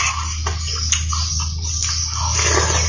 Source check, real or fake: real